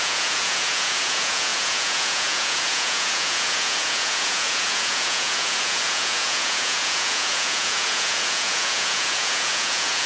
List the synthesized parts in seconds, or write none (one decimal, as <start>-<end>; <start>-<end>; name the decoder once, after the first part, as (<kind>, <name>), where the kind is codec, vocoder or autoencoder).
0.0-10.1 (vocoder, Vocos)